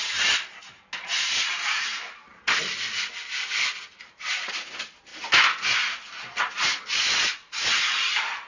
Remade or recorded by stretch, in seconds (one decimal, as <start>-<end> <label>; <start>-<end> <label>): 0.0-8.5 recorded